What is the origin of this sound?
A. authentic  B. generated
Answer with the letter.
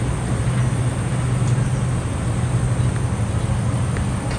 A